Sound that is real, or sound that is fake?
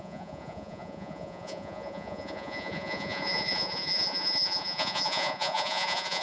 fake